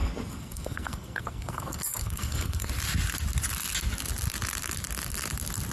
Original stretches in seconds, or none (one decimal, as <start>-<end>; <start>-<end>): 2.7-5.7